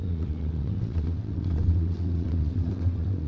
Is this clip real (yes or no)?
no